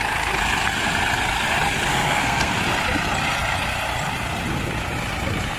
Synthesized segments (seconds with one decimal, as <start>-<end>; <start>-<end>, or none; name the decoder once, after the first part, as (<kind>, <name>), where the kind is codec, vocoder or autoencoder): 1.9-2.6 (codec, SNAC)